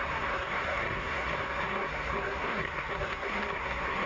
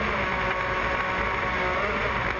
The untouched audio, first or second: second